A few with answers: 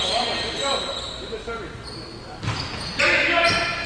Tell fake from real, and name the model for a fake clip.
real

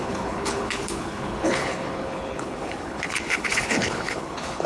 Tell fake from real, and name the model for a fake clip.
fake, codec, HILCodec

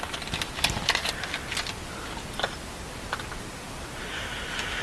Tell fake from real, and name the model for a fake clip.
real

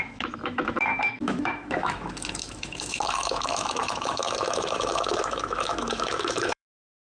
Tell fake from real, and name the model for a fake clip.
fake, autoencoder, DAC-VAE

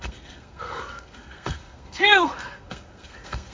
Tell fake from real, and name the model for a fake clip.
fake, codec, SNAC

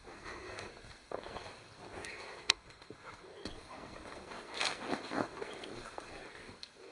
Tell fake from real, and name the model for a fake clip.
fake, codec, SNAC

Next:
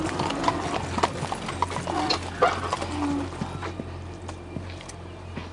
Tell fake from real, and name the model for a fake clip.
real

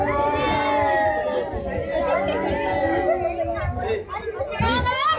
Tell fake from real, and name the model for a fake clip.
real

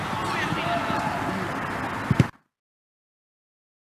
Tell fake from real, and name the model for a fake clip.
real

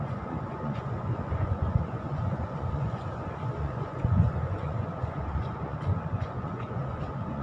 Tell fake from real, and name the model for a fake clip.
fake, vocoder, Vocos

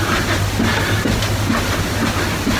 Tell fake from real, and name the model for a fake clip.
real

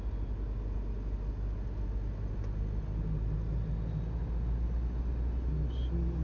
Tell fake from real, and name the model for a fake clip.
real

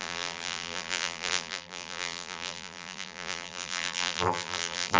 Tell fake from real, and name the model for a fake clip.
fake, vocoder, BigVGAN v2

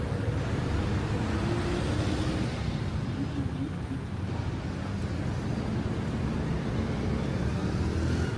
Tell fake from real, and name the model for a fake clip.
real